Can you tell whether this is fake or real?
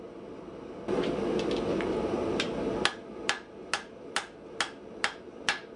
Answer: real